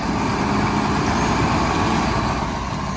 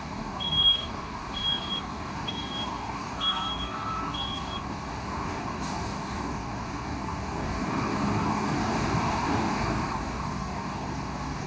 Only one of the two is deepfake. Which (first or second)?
second